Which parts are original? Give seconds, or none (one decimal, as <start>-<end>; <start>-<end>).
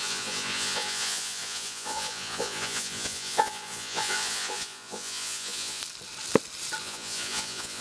5.8-6.8